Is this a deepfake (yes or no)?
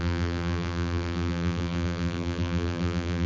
yes